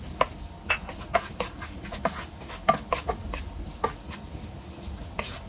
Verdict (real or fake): real